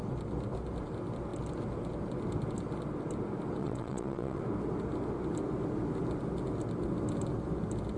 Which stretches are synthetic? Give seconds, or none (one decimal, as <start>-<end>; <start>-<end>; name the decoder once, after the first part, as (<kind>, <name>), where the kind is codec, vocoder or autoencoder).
3.6-4.4 (vocoder, WaveNeXt)